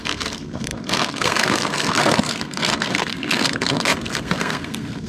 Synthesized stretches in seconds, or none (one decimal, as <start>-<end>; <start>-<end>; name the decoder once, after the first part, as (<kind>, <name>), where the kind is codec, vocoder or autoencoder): 0.0-5.1 (codec, SNAC)